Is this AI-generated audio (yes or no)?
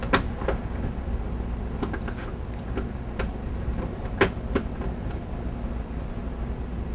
no